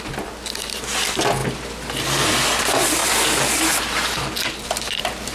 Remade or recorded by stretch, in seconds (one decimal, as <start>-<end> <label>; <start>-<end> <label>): 0.0-5.3 recorded